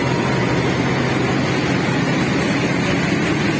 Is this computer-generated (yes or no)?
no